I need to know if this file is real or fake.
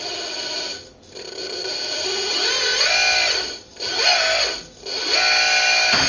real